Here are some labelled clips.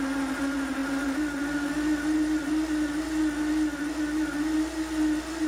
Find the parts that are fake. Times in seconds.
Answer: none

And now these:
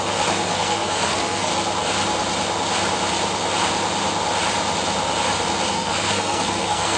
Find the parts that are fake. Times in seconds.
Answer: 0.0-1.5 (codec, SNAC); 5.7-7.0

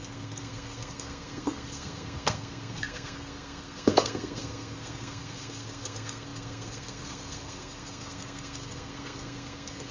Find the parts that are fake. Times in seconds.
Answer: 0.0-9.9 (codec, SNAC)

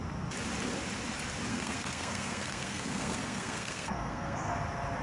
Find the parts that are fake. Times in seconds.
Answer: 1.5-4.5 (codec, SNAC)

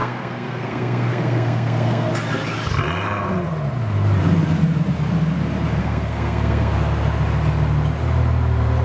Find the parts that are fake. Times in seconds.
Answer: 0.0-2.1 (codec, SNAC); 5.8-6.7

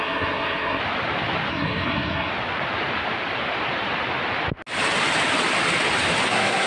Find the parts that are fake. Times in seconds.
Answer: 0.0-0.8 (codec, SNAC); 1.5-2.3; 6.3-6.7